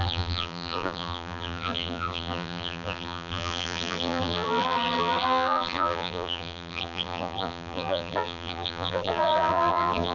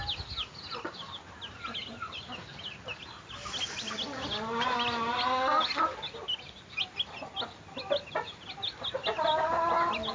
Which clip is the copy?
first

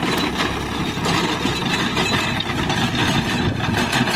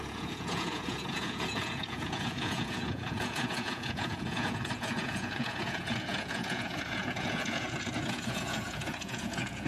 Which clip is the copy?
second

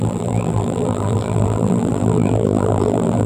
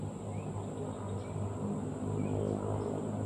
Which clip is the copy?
first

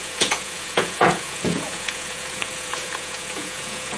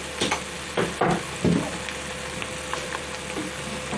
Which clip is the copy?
first